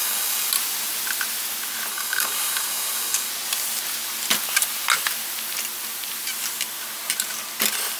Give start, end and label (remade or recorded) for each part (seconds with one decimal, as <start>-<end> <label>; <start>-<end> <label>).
0.0-0.5 remade; 0.5-1.9 recorded; 1.9-3.3 remade; 3.3-8.0 recorded